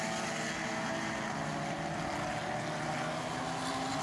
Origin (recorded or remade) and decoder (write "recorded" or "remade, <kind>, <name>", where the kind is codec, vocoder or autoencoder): recorded